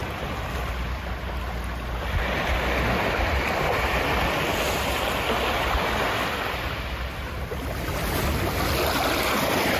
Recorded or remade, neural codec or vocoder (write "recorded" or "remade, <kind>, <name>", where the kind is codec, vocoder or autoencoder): recorded